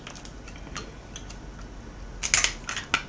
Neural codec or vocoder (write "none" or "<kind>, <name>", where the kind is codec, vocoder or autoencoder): none